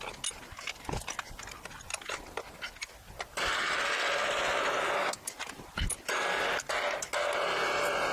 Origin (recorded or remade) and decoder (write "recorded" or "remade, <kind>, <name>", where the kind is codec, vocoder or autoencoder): recorded